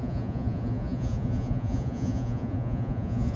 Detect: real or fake fake